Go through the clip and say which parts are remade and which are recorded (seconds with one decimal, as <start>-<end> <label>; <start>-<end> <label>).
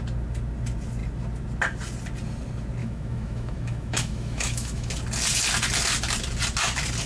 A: 0.0-2.8 recorded; 2.8-4.9 remade; 4.9-7.1 recorded